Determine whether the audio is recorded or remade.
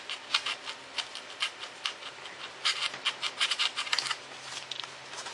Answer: recorded